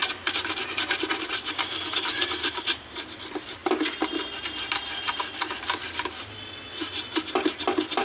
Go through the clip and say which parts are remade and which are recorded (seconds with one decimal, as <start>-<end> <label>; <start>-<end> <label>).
0.0-8.0 recorded